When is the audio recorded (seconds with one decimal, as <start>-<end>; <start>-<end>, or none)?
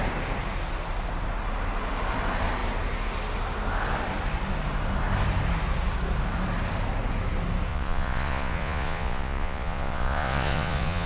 0.0-7.7